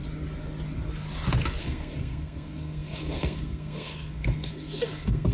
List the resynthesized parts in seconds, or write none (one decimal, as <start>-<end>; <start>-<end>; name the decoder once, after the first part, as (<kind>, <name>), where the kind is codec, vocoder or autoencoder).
1.6-5.3 (codec, SNAC)